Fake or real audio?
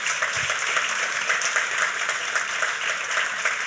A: fake